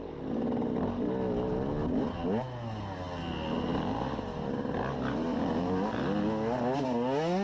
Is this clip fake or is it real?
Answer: real